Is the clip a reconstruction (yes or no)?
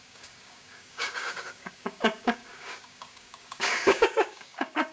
yes